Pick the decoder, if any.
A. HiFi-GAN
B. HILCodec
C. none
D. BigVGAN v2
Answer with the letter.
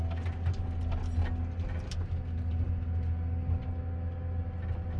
C